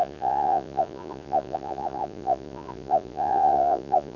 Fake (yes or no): yes